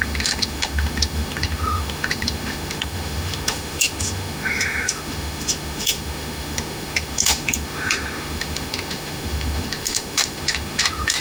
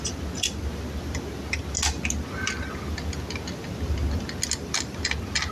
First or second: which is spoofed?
first